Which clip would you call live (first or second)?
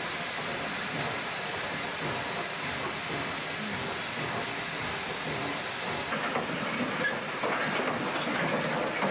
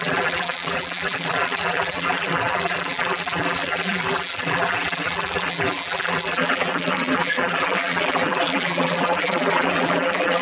first